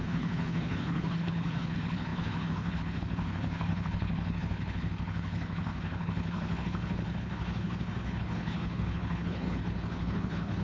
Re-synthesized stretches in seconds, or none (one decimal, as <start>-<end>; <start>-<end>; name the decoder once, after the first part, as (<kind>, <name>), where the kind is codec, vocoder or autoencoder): 0.0-10.6 (codec, HILCodec)